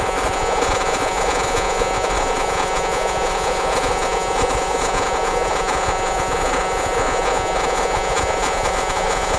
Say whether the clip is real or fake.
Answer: fake